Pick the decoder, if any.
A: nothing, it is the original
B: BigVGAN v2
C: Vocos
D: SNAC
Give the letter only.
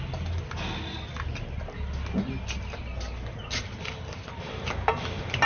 A